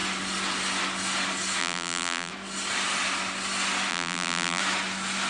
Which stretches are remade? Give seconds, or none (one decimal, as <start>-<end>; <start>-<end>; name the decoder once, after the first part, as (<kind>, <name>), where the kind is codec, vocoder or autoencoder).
1.6-2.3 (vocoder, BigVGAN v2); 3.9-4.6